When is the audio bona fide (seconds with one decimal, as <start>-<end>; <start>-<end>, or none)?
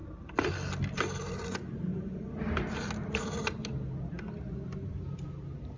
0.0-5.8